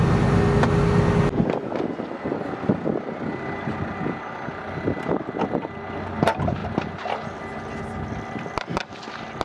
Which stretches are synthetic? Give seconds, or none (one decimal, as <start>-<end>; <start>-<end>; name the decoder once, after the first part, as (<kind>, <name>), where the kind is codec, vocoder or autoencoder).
none